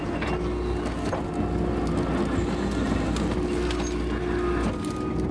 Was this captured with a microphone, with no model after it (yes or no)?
yes